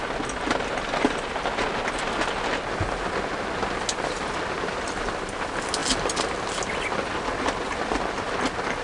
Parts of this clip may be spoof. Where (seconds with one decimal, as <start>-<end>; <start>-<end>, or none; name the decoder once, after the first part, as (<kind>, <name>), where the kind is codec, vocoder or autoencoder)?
none